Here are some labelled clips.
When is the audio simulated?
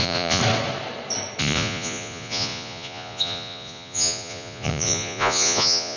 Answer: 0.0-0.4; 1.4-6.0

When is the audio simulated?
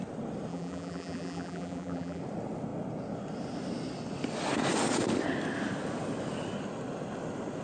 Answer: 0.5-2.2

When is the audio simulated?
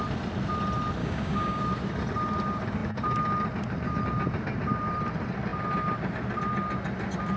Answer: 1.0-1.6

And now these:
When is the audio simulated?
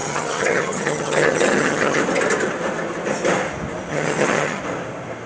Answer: 0.0-2.0; 3.9-4.6